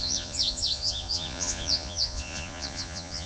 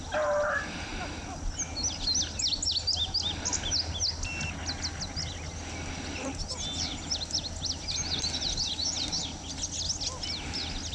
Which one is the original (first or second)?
second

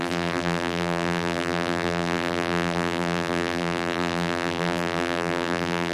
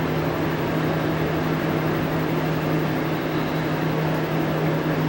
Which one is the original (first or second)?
second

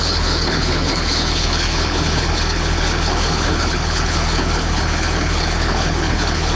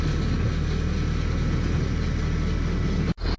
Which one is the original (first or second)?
second